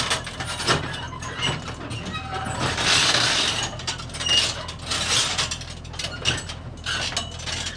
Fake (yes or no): no